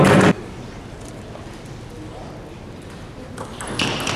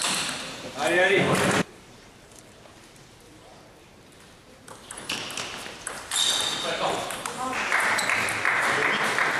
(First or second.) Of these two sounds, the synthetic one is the second